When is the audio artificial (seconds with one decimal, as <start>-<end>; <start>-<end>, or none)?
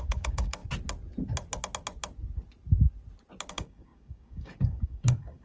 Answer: 0.0-0.6; 3.5-5.4